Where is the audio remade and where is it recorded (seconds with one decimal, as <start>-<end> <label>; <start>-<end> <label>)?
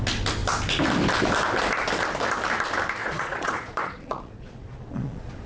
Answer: 0.0-3.0 recorded; 3.0-5.5 remade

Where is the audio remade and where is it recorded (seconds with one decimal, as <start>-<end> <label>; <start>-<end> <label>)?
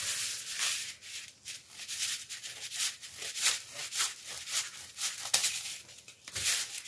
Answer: 0.0-5.4 recorded; 5.4-6.3 remade; 6.3-6.9 recorded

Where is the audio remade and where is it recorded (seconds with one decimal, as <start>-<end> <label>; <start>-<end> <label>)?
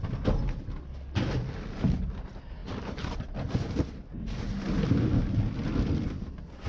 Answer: 0.0-6.7 recorded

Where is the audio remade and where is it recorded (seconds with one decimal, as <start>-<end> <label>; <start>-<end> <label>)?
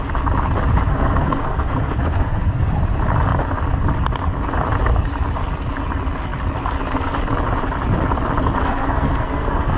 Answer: 0.0-0.9 recorded; 0.9-2.7 remade; 2.7-8.6 recorded; 8.6-9.8 remade